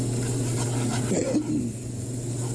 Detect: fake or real real